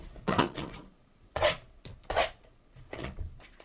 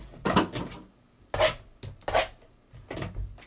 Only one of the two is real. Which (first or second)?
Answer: second